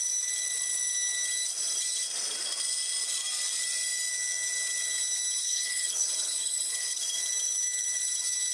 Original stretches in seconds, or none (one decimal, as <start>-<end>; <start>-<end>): 0.0-5.4; 7.0-8.5